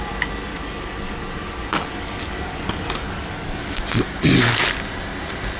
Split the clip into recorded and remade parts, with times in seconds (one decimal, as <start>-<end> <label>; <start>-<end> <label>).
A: 0.0-0.5 recorded; 0.5-3.8 remade; 3.8-5.6 recorded

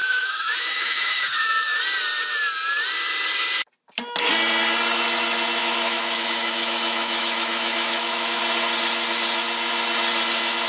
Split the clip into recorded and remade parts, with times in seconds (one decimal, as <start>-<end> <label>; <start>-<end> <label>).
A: 0.0-1.8 remade; 1.8-5.6 recorded; 5.6-8.4 remade; 8.4-10.7 recorded

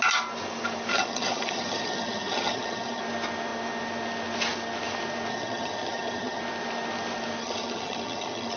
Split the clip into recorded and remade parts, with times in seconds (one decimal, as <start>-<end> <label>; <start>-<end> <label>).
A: 0.0-0.9 recorded; 0.9-3.0 remade; 3.0-5.3 recorded; 5.3-6.4 remade; 6.4-7.4 recorded; 7.4-8.6 remade

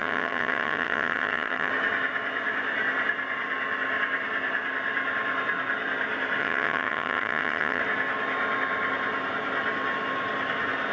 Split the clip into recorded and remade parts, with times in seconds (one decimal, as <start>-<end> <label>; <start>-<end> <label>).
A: 0.0-1.7 remade; 1.7-6.4 recorded; 6.4-7.8 remade; 7.8-10.9 recorded

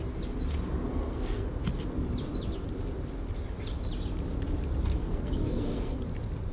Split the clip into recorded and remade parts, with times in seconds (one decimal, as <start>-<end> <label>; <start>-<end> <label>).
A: 0.0-0.9 recorded; 0.9-1.5 remade; 1.5-5.0 recorded; 5.0-6.0 remade; 6.0-6.5 recorded

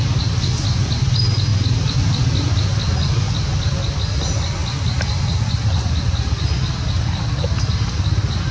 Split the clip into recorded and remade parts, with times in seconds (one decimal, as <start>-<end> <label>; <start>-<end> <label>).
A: 0.0-8.5 recorded

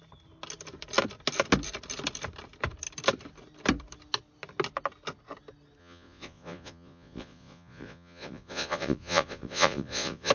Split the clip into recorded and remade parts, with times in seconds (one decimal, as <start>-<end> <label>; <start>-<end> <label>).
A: 0.0-5.8 recorded; 5.8-10.3 remade